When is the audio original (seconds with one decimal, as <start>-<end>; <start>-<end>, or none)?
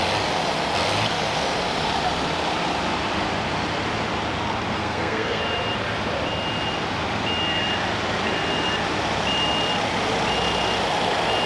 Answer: 0.0-4.7; 5.4-11.5